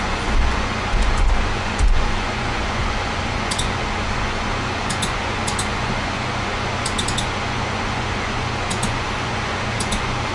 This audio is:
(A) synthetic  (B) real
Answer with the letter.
A